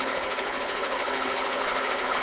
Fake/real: fake